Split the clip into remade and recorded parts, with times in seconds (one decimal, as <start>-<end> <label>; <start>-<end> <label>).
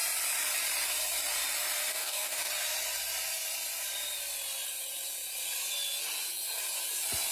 0.0-1.9 recorded; 1.9-2.5 remade; 2.5-7.3 recorded